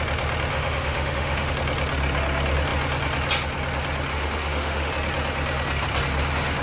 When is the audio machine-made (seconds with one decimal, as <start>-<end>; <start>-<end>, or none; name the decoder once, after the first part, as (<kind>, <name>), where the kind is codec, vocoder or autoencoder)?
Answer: 0.5-1.5 (autoencoder, DAC-VAE); 4.1-4.9